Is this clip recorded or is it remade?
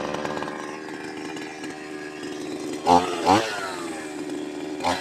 recorded